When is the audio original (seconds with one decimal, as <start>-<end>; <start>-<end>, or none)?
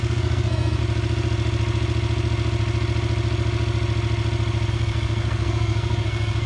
0.8-4.7